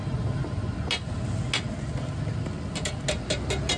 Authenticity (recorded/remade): recorded